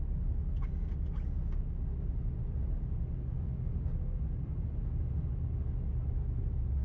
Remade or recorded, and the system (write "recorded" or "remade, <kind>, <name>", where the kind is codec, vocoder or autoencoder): recorded